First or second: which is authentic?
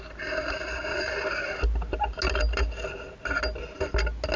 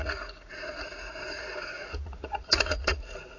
first